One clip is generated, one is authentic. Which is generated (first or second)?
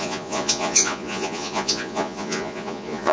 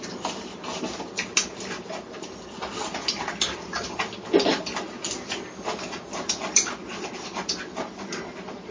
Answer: first